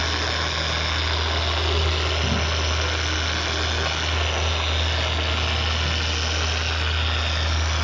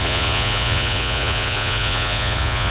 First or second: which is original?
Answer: first